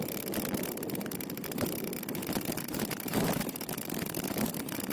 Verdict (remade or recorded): remade